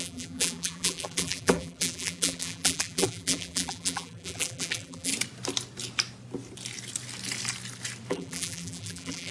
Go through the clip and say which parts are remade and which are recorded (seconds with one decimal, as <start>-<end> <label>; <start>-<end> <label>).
0.0-5.1 remade; 5.1-8.1 recorded; 8.1-9.3 remade